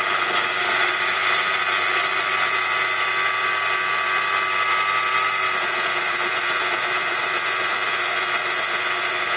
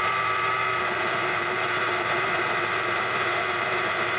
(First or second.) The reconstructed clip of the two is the second